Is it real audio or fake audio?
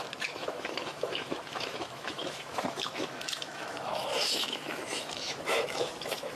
fake